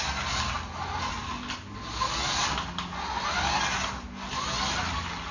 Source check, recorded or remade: recorded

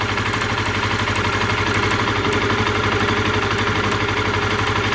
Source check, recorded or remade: recorded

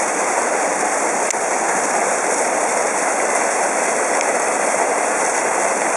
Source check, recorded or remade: recorded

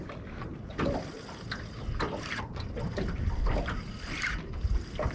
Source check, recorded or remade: recorded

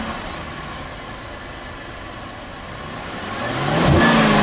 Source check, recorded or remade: recorded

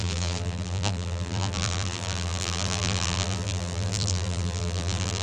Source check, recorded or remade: remade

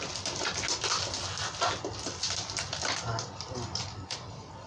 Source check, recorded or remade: recorded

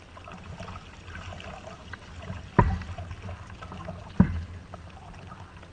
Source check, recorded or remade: recorded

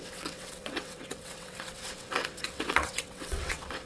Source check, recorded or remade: remade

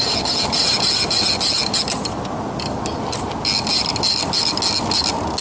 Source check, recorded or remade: recorded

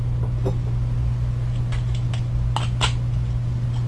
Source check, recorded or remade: recorded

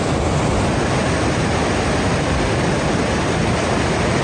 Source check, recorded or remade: recorded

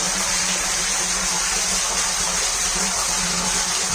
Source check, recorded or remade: remade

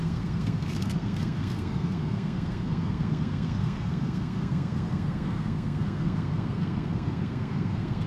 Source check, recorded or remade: remade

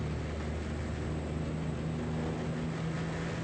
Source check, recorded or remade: recorded